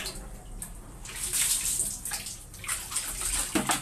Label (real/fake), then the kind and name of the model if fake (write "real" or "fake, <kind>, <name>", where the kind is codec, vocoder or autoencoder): real